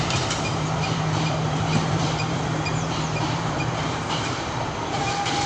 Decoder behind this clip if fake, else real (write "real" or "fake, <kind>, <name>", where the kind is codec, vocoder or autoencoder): fake, vocoder, BigVGAN v2